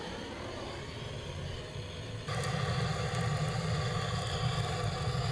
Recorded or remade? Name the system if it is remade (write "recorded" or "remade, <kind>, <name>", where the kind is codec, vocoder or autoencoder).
recorded